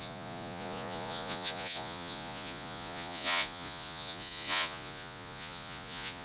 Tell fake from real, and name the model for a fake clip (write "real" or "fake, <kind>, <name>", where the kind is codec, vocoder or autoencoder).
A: fake, vocoder, Vocos